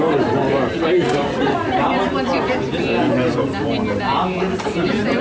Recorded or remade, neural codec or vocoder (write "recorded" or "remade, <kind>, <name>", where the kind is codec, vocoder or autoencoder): recorded